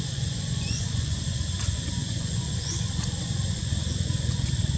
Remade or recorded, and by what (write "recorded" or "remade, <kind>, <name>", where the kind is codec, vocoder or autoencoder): remade, vocoder, Vocos